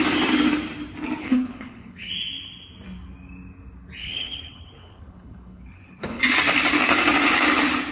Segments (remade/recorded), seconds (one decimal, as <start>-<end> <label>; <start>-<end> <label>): 0.0-1.2 recorded; 1.2-2.1 remade; 2.1-4.0 recorded; 4.0-6.2 remade; 6.2-7.9 recorded